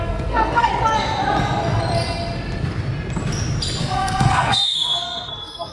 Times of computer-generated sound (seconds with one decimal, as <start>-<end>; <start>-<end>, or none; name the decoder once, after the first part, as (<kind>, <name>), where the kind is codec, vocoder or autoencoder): 0.0-0.7 (codec, SNAC); 3.8-5.7